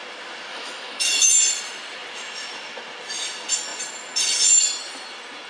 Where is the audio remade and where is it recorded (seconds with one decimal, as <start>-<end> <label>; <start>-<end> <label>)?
0.0-0.5 recorded; 0.5-1.2 remade; 1.2-5.5 recorded